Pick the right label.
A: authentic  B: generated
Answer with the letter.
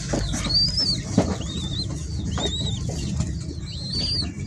A